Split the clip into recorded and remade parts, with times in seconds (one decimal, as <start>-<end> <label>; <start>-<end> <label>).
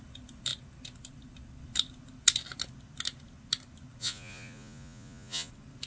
0.0-4.0 recorded; 4.0-5.5 remade; 5.5-5.9 recorded